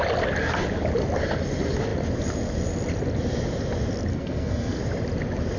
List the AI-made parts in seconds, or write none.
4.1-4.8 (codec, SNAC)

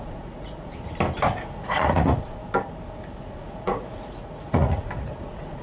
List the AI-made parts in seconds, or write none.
0.0-0.7 (vocoder, Vocos); 1.4-2.4; 3.2-5.6